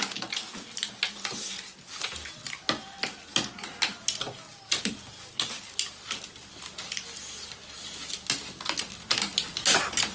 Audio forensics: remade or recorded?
recorded